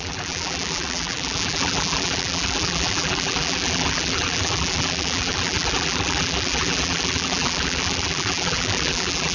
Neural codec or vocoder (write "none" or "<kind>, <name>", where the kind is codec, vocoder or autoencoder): vocoder, BigVGAN v2